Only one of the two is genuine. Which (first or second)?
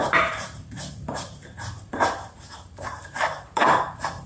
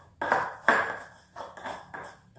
second